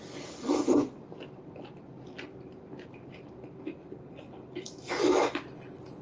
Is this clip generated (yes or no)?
no